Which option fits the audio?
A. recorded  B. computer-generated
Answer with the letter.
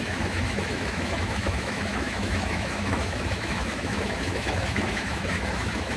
B